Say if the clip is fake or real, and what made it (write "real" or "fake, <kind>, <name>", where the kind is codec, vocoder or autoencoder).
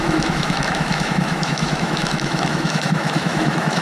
fake, autoencoder, DAC-VAE